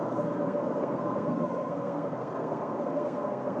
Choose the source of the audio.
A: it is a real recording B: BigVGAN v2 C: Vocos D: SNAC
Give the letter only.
D